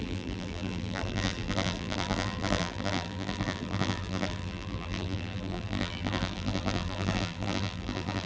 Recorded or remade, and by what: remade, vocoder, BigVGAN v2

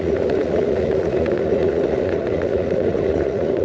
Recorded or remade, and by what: remade, vocoder, Vocos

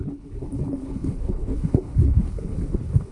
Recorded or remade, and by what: remade, codec, HILCodec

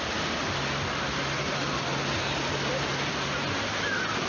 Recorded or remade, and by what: recorded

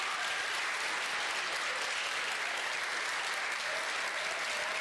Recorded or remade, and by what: recorded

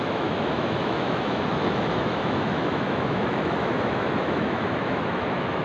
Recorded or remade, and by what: remade, autoencoder, DAC-VAE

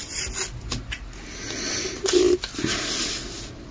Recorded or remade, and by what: recorded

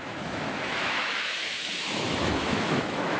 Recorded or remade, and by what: remade, autoencoder, DAC-VAE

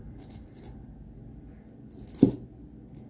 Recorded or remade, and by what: recorded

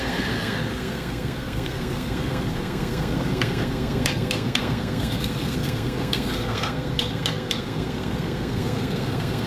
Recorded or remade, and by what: remade, codec, SNAC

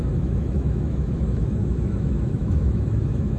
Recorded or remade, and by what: remade, autoencoder, DAC-VAE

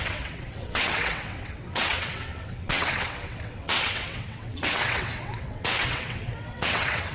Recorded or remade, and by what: remade, vocoder, WaveNeXt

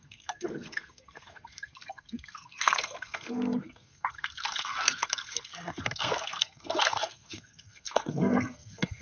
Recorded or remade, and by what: remade, codec, SNAC